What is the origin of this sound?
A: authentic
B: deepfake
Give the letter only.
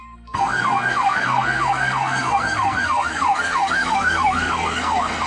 B